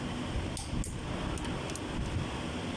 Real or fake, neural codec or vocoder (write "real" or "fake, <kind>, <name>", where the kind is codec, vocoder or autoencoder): real